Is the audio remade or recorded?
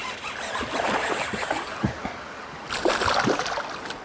recorded